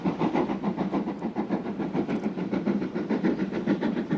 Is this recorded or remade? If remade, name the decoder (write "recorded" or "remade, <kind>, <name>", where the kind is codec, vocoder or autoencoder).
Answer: remade, vocoder, BigVGAN v2